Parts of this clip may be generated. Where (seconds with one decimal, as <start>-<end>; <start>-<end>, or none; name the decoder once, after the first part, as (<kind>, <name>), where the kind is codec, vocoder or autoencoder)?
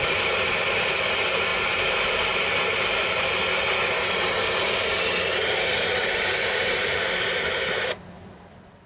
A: 5.4-7.5 (vocoder, BigVGAN v2)